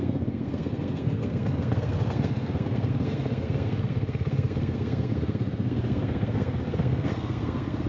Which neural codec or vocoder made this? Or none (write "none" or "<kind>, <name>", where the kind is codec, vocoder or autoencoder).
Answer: codec, SNAC